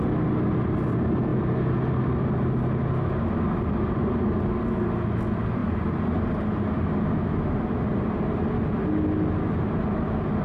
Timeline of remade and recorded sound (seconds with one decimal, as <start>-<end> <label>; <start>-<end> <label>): 0.0-10.4 recorded

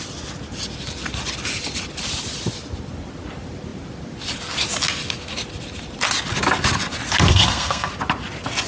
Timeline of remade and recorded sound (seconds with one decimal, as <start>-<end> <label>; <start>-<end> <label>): 0.0-7.3 recorded; 7.3-7.9 remade; 7.9-8.7 recorded

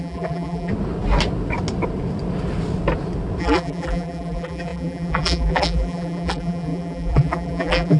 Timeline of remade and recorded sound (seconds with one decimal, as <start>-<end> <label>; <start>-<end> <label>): 0.0-0.7 remade; 0.7-3.4 recorded; 3.4-8.0 remade

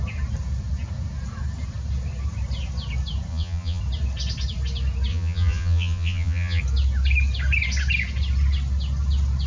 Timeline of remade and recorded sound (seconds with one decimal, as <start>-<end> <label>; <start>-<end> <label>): 0.0-3.3 recorded; 3.3-3.8 remade; 3.8-5.1 recorded; 5.1-6.6 remade; 6.6-9.5 recorded

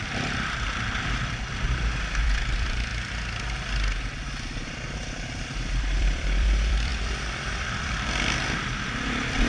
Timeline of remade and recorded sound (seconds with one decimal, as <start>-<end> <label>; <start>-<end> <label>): 0.0-2.9 remade; 2.9-4.0 recorded; 4.0-9.5 remade